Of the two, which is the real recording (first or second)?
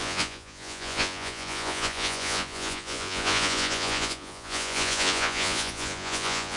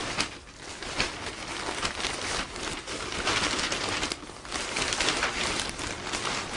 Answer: second